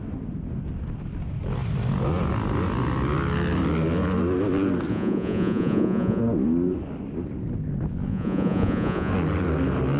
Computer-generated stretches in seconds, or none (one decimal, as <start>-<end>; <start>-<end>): 4.9-6.2; 8.1-9.1